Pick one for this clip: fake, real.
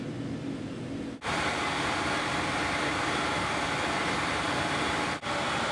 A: real